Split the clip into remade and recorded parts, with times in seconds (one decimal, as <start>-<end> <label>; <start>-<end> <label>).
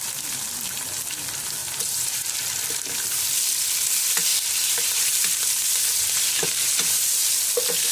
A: 0.0-1.6 recorded; 1.6-2.3 remade; 2.3-4.3 recorded; 4.3-7.4 remade; 7.4-7.9 recorded